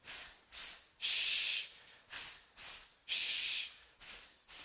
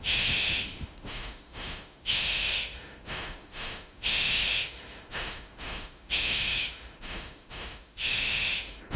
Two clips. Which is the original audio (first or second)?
first